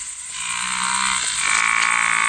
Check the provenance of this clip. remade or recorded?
recorded